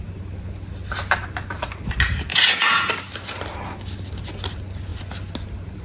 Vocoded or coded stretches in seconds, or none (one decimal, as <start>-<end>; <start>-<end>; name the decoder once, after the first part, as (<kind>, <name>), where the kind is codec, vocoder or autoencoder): 2.3-2.9 (vocoder, Vocos)